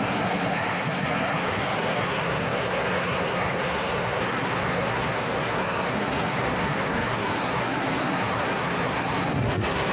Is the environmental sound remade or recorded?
remade